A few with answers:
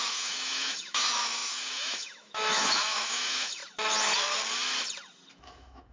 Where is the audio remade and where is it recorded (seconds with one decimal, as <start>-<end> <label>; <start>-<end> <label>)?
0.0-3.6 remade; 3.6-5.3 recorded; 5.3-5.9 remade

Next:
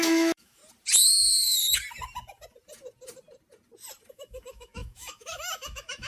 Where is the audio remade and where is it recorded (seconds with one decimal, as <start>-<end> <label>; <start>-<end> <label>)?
0.0-0.6 remade; 0.6-4.1 recorded; 4.1-6.1 remade

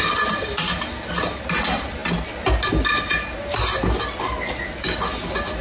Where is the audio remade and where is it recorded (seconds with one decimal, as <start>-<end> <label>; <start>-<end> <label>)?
0.0-5.6 recorded